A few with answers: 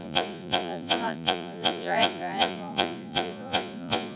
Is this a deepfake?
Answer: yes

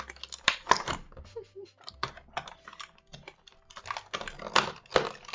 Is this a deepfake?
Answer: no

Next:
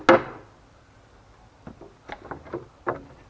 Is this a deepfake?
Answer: no